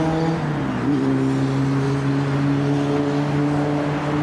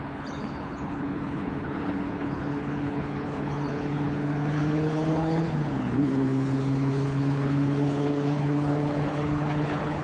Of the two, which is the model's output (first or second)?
second